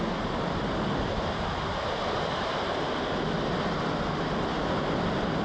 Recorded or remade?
recorded